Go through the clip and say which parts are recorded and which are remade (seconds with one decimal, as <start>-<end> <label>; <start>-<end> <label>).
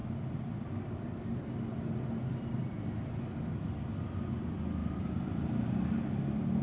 0.0-6.6 recorded